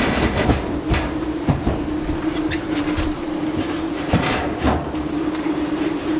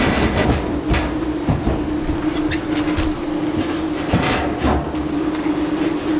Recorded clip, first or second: second